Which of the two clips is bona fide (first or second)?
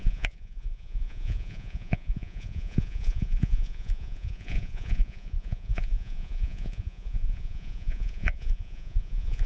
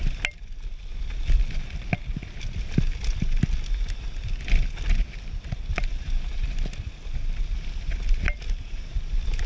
second